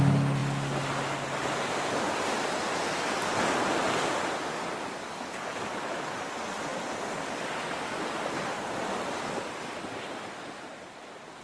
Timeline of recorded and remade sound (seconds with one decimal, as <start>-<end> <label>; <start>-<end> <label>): 0.0-11.4 recorded